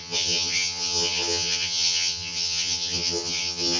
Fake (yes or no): yes